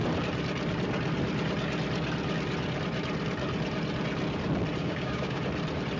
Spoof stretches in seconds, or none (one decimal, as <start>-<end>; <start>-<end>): 4.8-5.4